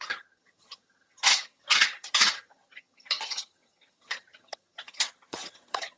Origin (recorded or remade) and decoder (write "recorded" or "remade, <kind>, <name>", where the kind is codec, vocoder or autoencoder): remade, vocoder, HiFi-GAN